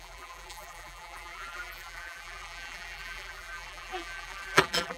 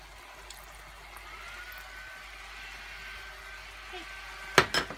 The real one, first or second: second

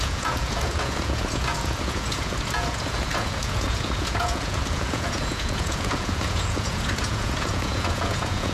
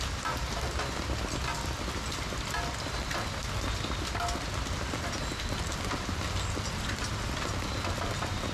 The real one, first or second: second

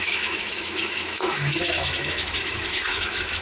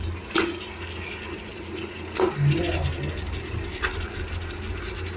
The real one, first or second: second